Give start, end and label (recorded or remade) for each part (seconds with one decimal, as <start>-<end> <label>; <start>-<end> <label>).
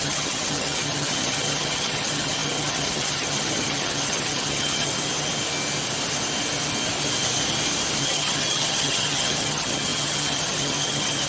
0.0-4.9 remade; 4.9-8.0 recorded; 8.0-11.3 remade